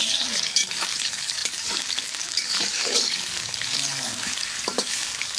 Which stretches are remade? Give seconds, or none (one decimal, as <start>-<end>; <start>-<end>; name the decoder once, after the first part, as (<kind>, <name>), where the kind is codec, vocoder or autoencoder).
0.0-5.4 (codec, DAC)